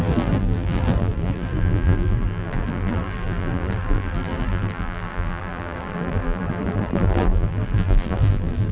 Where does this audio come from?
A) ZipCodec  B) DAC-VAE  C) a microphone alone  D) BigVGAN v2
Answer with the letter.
D